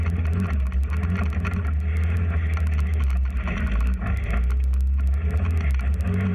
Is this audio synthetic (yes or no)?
no